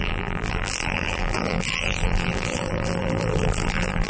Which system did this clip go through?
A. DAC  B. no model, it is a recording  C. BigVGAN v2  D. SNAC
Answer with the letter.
C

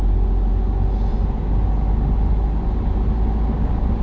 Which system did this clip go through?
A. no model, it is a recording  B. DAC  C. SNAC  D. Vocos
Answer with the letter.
A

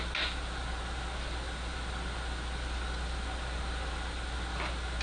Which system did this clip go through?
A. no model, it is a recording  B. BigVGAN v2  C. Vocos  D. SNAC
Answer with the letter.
A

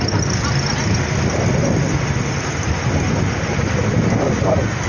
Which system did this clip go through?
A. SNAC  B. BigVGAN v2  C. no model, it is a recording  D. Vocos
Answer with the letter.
C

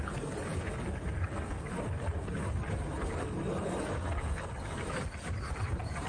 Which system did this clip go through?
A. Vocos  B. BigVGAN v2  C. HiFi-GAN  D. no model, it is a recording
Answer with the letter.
D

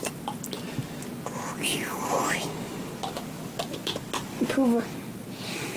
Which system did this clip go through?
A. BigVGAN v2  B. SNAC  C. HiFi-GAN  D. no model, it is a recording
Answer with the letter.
D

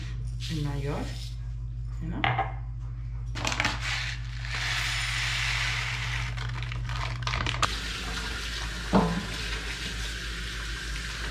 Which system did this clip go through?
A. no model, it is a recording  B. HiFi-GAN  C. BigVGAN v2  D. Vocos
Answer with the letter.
A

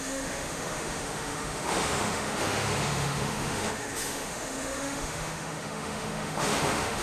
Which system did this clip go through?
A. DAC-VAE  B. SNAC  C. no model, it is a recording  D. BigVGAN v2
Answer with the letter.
A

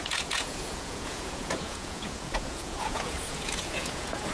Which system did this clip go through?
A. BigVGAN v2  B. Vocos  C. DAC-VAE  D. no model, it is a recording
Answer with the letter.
B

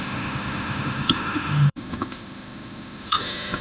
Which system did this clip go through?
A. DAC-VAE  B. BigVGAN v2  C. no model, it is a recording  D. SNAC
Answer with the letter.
A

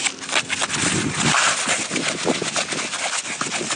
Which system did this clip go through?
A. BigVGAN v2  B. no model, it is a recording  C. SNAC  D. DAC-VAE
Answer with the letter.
B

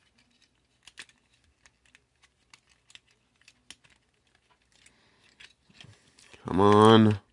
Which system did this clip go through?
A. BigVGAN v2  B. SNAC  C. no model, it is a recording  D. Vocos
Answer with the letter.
C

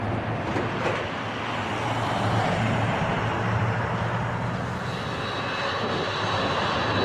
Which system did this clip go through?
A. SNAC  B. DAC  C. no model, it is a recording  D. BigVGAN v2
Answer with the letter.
C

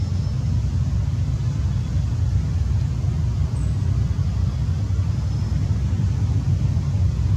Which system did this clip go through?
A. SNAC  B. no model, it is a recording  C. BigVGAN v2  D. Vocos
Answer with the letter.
B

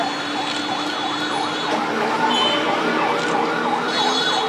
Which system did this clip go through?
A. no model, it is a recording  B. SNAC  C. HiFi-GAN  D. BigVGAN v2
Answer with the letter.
A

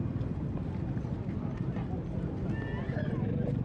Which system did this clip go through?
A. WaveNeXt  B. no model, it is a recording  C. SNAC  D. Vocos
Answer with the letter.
B